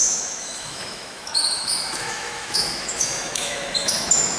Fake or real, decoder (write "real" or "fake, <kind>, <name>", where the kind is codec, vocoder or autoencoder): fake, autoencoder, DAC-VAE